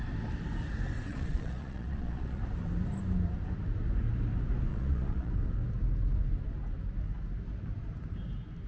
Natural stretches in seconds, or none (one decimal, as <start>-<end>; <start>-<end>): 0.0-1.1; 2.4-4.7; 5.3-8.7

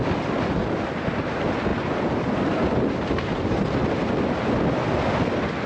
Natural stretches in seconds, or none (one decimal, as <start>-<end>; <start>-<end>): 0.0-5.7

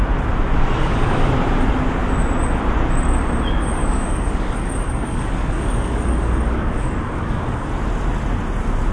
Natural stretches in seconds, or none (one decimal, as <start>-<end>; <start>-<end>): 0.0-0.8; 1.3-3.8; 7.7-8.9